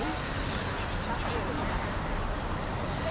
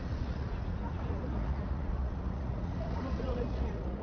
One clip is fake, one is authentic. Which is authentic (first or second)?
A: first